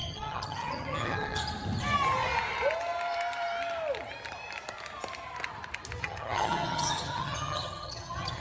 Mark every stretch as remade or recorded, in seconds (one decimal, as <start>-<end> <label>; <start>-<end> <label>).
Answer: 0.0-1.4 remade; 1.4-6.0 recorded; 6.0-8.4 remade